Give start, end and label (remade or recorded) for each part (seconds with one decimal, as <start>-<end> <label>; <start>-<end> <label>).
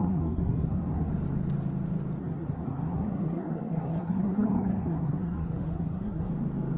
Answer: 0.0-1.1 remade; 1.1-2.2 recorded; 2.2-6.3 remade; 6.3-6.8 recorded